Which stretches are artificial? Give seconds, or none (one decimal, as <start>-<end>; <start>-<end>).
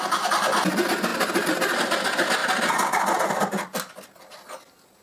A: none